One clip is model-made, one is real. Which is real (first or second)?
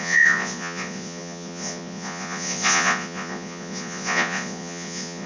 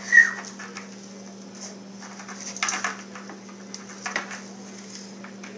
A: second